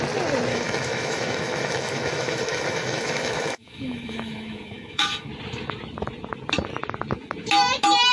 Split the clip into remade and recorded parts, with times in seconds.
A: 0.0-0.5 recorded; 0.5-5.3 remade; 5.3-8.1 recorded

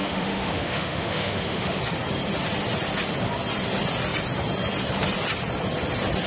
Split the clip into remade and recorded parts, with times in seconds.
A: 0.0-1.8 remade; 1.8-6.3 recorded

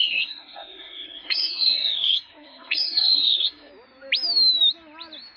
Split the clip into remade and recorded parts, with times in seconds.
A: 0.0-3.7 remade; 3.7-5.4 recorded

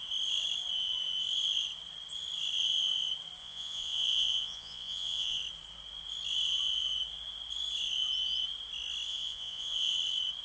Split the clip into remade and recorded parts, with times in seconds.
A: 0.0-3.4 recorded; 3.4-5.4 remade; 5.4-9.1 recorded; 9.1-9.9 remade; 9.9-10.4 recorded

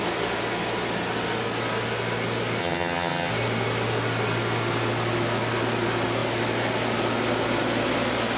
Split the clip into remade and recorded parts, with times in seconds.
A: 0.0-2.6 recorded; 2.6-3.3 remade; 3.3-8.4 recorded

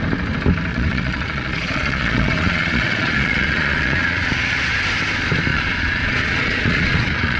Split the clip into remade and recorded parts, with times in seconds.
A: 0.0-0.7 recorded; 0.7-4.8 remade; 4.8-5.5 recorded; 5.5-7.4 remade

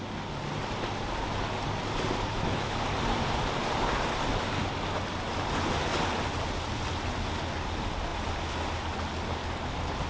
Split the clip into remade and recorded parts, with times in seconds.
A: 0.0-2.3 recorded; 2.3-2.8 remade; 2.8-10.1 recorded

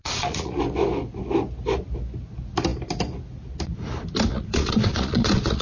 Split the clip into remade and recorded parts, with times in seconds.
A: 0.0-0.6 remade; 0.6-4.3 recorded; 4.3-5.6 remade